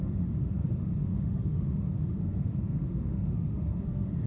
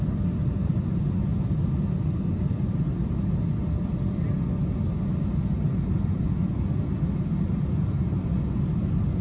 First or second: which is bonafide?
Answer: second